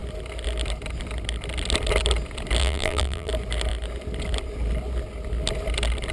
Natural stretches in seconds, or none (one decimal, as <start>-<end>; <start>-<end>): 0.0-2.6; 3.3-6.1